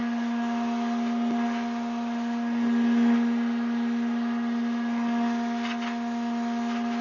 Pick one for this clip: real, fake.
real